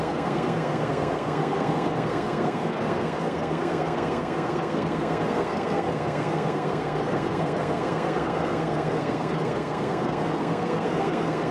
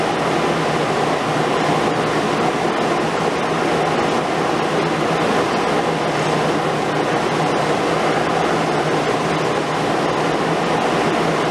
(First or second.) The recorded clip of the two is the second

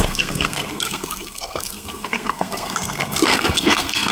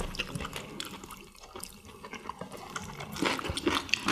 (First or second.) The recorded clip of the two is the second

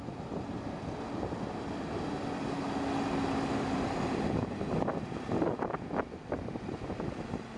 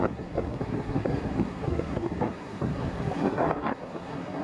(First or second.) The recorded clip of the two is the first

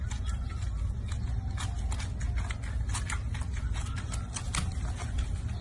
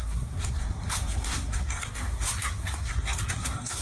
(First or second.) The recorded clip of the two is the first